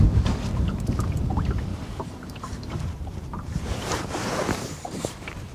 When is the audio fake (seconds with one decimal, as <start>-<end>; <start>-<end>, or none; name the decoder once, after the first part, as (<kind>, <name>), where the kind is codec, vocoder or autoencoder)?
1.7-5.0 (vocoder, BigVGAN v2)